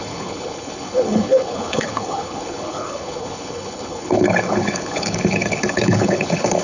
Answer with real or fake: fake